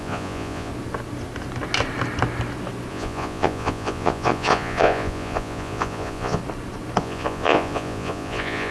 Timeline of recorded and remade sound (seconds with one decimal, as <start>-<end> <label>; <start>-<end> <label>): 0.0-0.7 remade; 0.7-2.9 recorded; 2.9-6.4 remade; 6.4-7.0 recorded; 7.0-8.7 remade